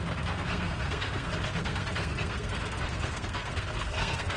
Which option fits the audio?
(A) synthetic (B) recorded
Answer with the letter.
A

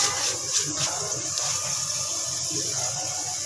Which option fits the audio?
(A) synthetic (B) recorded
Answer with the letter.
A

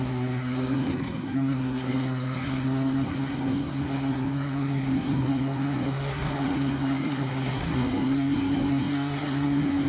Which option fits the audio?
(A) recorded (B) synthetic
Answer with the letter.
B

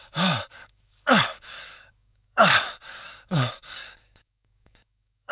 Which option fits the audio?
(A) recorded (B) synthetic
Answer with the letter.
B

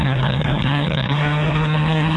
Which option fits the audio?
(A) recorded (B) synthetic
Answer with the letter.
B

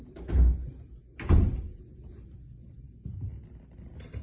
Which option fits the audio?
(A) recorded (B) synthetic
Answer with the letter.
A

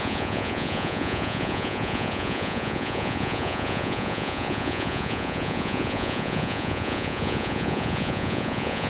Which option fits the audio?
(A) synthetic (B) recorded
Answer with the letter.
A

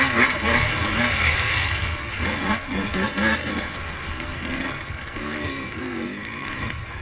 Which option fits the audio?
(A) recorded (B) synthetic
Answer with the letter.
B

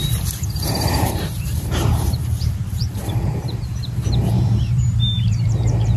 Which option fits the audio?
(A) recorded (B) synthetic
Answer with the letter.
B